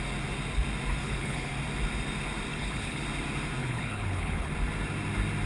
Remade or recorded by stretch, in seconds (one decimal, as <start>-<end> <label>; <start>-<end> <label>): 0.0-1.0 recorded; 1.0-1.5 remade; 1.5-2.5 recorded; 2.5-3.0 remade; 3.0-3.6 recorded; 3.6-4.5 remade; 4.5-5.5 recorded